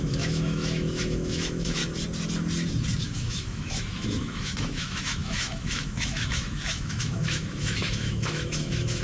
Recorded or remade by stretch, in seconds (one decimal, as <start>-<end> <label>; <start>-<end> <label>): 0.0-1.8 remade; 1.8-3.0 recorded; 3.0-9.0 remade

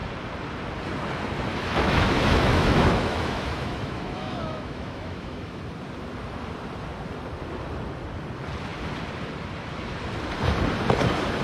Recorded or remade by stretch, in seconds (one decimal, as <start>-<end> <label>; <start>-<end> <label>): 0.0-1.5 recorded; 1.5-5.6 remade; 5.6-11.4 recorded

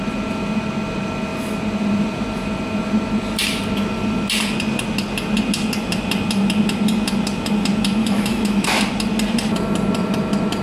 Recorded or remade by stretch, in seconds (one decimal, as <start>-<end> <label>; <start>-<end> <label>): 0.0-8.0 recorded; 8.0-8.8 remade; 8.8-10.6 recorded

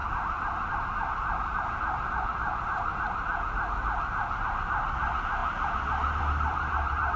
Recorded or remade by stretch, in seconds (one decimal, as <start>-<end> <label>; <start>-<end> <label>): 0.0-7.2 recorded

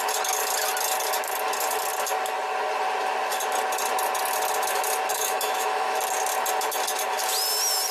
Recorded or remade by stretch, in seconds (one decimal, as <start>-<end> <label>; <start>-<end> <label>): 0.0-5.1 recorded; 5.1-6.0 remade; 6.0-7.9 recorded

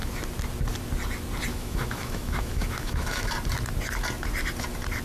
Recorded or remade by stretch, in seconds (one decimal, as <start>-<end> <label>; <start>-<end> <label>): 0.0-1.5 recorded; 1.5-3.3 remade; 3.3-5.0 recorded

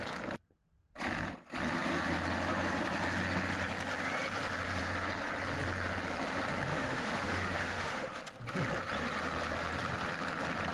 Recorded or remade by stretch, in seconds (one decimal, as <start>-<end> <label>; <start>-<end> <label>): 0.0-6.7 recorded; 6.7-8.2 remade; 8.2-10.7 recorded

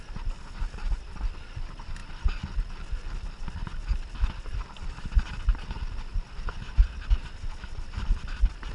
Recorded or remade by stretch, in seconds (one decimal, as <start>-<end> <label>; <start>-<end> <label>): 0.0-8.7 recorded